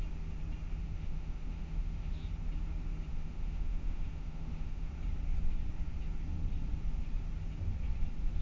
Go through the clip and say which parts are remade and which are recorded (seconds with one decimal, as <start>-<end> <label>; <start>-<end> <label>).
0.0-0.8 recorded; 0.8-2.1 remade; 2.1-3.1 recorded; 3.1-4.9 remade; 4.9-8.4 recorded